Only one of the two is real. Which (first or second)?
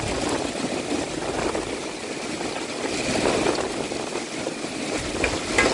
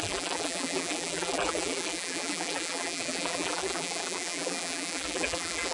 first